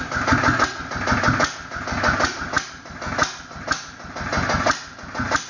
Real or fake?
real